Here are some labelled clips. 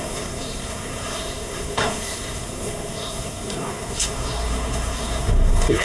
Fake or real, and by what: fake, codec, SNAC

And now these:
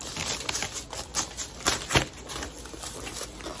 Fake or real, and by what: real